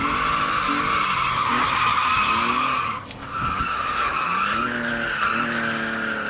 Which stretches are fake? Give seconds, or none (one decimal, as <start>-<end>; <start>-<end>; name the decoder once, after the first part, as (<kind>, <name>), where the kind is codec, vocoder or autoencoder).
1.9-4.9 (codec, DAC)